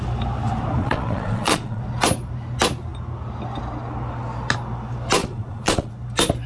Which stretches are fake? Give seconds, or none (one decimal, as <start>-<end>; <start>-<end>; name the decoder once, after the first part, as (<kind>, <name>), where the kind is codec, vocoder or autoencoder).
0.8-1.8 (vocoder, Vocos); 5.2-5.9